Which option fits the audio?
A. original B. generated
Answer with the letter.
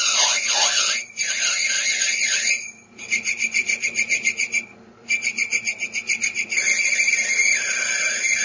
B